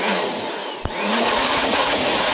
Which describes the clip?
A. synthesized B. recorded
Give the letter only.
A